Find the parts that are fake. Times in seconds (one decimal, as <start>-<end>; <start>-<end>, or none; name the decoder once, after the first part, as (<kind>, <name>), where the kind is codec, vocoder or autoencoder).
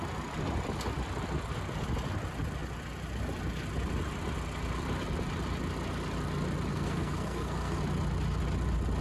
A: 6.7-7.8 (codec, SNAC)